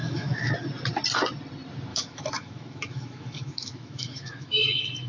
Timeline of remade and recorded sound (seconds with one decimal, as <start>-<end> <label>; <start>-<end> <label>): 0.0-0.5 remade; 0.5-1.9 recorded; 1.9-5.1 remade